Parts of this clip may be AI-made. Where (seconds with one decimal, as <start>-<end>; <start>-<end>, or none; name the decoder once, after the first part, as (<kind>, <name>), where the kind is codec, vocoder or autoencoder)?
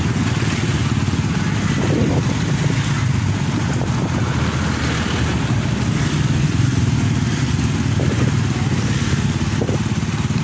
none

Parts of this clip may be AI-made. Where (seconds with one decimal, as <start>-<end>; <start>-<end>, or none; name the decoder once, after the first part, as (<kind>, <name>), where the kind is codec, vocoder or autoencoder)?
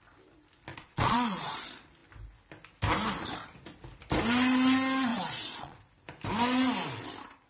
0.7-1.6 (vocoder, Vocos); 5.1-5.9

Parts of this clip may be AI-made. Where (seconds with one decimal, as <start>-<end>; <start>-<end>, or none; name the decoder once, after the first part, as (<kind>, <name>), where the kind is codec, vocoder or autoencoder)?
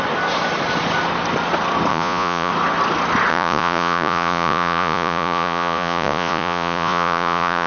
1.9-2.5 (vocoder, Vocos); 3.3-7.7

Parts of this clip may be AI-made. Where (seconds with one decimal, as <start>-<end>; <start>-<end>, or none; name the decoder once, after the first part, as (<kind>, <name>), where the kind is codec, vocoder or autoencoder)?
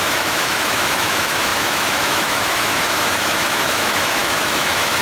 0.0-5.0 (autoencoder, DAC-VAE)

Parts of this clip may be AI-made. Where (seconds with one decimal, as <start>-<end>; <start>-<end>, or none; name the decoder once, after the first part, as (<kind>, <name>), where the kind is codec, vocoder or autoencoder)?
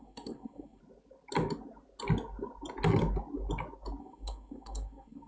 0.0-0.8 (codec, SNAC); 4.0-5.3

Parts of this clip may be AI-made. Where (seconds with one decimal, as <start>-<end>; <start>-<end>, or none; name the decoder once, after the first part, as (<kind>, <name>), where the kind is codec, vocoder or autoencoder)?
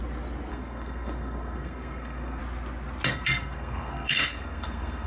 0.5-2.4 (codec, SNAC); 3.1-5.1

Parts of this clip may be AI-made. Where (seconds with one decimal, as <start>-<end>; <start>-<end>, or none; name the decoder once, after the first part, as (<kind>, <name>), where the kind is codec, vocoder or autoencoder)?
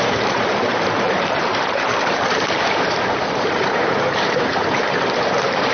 0.0-5.7 (vocoder, BigVGAN v2)